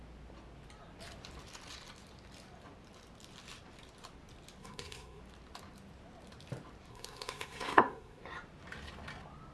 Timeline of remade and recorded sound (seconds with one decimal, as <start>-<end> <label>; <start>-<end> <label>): 0.0-4.6 recorded; 4.6-5.2 remade; 5.2-6.9 recorded; 6.9-8.2 remade; 8.2-9.5 recorded